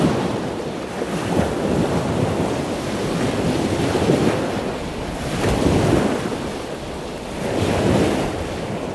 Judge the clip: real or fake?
real